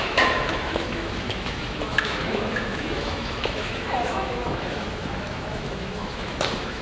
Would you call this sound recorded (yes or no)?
no